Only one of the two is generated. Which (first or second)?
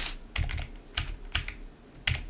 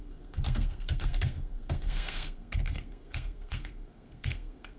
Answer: second